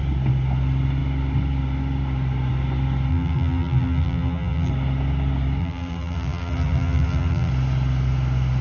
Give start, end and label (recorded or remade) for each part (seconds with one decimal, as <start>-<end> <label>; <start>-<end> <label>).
0.0-3.1 recorded; 3.1-4.7 remade; 4.7-5.6 recorded; 5.6-7.5 remade; 7.5-8.6 recorded